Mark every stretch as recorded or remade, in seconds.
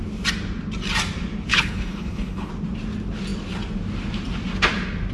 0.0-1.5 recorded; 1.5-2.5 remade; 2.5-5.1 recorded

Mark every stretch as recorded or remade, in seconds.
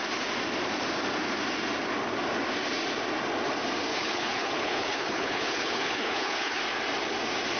0.0-3.9 recorded; 3.9-6.6 remade; 6.6-7.6 recorded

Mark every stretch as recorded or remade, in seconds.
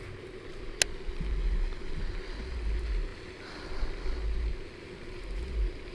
0.0-5.9 recorded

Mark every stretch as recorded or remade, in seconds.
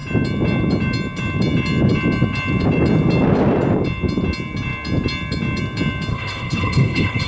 0.0-6.1 recorded; 6.1-7.3 remade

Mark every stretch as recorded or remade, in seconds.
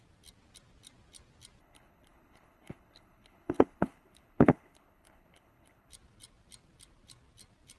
0.0-1.6 recorded; 1.6-5.9 remade; 5.9-7.8 recorded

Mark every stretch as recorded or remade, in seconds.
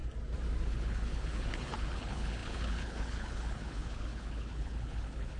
0.0-0.7 recorded; 0.7-5.4 remade